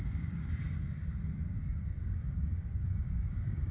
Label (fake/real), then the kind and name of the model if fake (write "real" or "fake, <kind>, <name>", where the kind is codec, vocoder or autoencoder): fake, codec, DAC